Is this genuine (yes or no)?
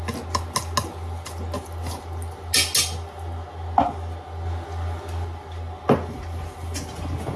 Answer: yes